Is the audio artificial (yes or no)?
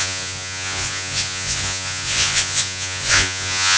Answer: yes